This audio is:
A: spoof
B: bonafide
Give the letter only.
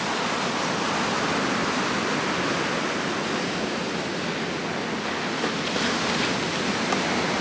B